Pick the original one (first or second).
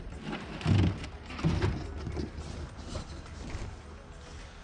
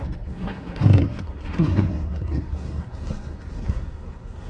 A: first